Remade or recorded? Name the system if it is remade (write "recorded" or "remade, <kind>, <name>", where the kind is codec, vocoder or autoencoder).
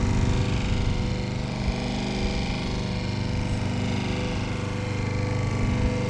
recorded